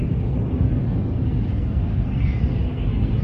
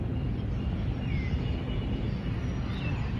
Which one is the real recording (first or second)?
second